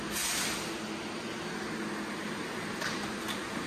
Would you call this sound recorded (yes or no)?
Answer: yes